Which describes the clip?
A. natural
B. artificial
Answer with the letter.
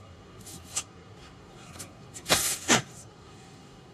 B